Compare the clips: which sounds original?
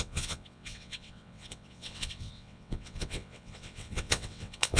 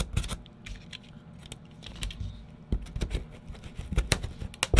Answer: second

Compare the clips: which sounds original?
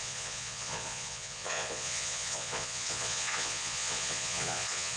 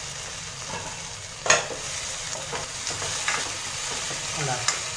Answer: second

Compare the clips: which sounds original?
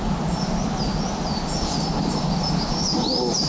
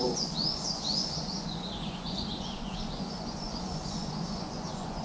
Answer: first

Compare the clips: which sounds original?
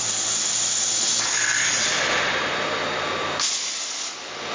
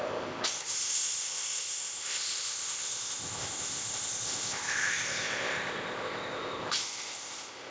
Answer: first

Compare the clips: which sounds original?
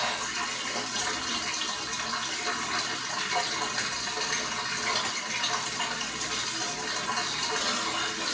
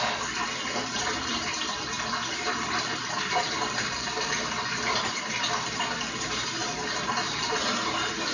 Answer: first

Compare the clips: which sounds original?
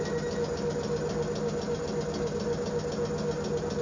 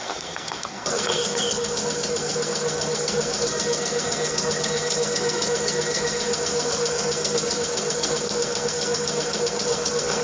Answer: first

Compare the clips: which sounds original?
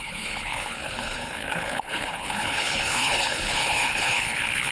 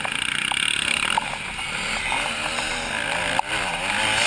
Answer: second